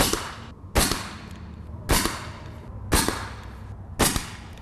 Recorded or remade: recorded